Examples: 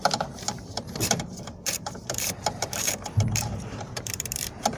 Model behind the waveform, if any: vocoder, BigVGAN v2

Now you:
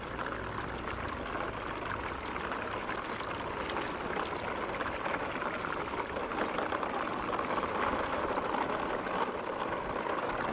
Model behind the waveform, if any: none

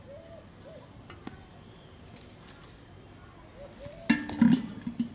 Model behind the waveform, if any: none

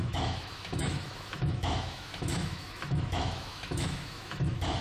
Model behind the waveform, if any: autoencoder, DAC-VAE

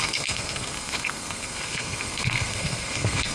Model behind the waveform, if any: codec, SNAC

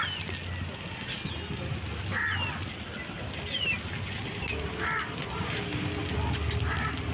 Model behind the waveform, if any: none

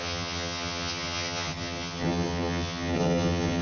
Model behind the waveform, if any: vocoder, HiFi-GAN